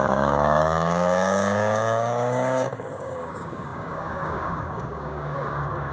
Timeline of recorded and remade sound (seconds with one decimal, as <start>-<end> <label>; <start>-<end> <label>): 0.0-5.9 remade